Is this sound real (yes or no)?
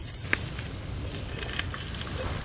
no